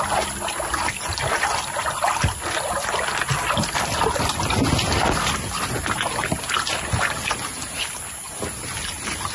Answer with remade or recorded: recorded